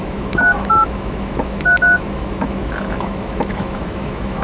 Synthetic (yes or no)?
yes